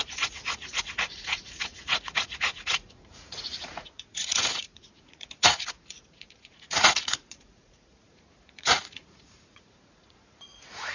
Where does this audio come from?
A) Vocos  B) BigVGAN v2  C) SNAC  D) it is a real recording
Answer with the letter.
A